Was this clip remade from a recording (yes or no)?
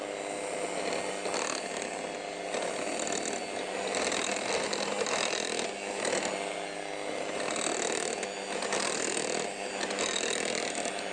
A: no